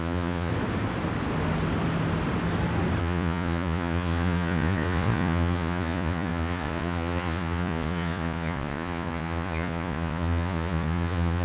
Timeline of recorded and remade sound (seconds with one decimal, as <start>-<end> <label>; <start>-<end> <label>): 0.0-0.5 remade; 0.5-3.0 recorded; 3.0-11.4 remade

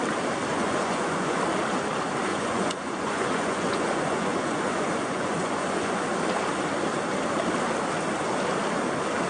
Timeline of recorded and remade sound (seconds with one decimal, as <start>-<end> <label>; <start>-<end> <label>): 0.0-0.5 recorded; 0.5-1.4 remade; 1.4-2.3 recorded; 2.3-6.0 remade; 6.0-9.3 recorded

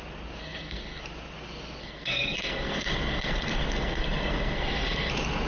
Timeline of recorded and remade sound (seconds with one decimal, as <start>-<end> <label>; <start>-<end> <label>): 0.0-0.4 recorded; 0.4-1.0 remade; 1.0-1.8 recorded; 1.8-5.1 remade; 5.1-5.5 recorded

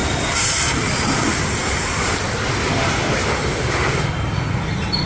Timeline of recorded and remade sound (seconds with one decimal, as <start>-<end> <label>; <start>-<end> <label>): 0.0-5.1 recorded

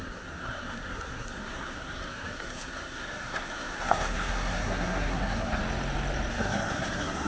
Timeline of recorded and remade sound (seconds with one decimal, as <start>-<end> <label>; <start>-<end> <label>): 0.0-5.6 remade; 5.6-6.3 recorded; 6.3-7.3 remade

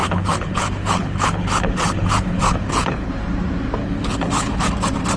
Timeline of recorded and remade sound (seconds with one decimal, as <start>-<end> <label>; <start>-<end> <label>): 0.0-3.1 remade; 3.1-3.8 recorded; 3.8-4.7 remade; 4.7-5.2 recorded